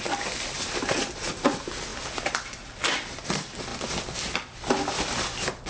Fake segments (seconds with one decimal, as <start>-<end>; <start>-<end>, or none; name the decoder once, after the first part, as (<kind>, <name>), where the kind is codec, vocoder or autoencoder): none